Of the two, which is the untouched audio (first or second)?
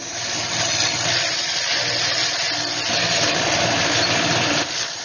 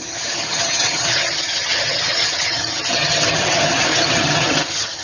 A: first